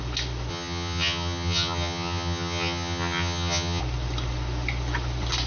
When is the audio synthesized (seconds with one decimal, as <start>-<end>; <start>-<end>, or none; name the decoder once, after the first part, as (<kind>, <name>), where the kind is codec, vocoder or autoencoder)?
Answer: 0.5-3.8 (vocoder, HiFi-GAN)